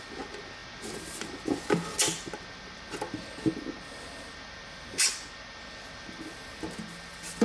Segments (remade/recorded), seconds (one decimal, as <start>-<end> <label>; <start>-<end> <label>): 0.0-7.4 recorded